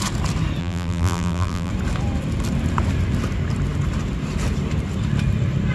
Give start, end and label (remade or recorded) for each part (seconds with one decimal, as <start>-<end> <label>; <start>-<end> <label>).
0.0-0.6 recorded; 0.6-1.7 remade; 1.7-5.7 recorded